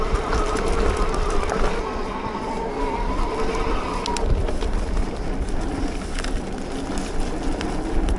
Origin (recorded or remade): recorded